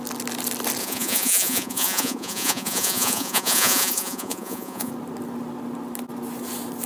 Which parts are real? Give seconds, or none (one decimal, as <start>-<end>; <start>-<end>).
0.0-0.8; 4.9-6.9